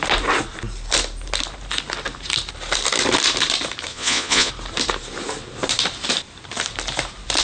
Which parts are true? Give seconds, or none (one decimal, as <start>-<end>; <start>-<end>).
0.0-3.9; 4.5-7.4